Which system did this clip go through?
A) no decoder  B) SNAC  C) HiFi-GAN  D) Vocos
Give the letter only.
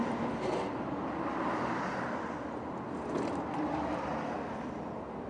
A